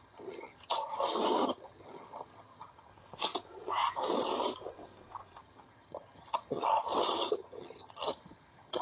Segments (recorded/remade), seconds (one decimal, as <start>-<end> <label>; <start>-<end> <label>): 0.0-2.9 remade; 2.9-5.4 recorded; 5.4-8.8 remade